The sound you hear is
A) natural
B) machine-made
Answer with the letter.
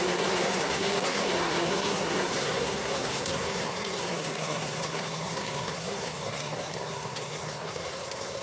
B